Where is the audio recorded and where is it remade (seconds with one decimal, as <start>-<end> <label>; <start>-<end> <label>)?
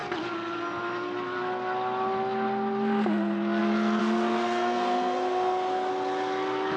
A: 0.0-4.0 recorded; 4.0-5.9 remade; 5.9-6.8 recorded